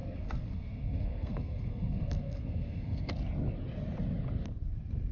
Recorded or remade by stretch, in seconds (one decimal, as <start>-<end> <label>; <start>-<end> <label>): 0.0-3.1 remade; 3.1-5.1 recorded